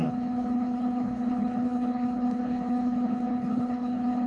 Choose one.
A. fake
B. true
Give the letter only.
A